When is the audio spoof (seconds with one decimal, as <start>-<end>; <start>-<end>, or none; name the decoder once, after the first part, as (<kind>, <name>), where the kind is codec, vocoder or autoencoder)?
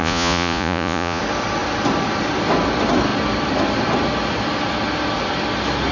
0.0-1.2 (vocoder, Vocos)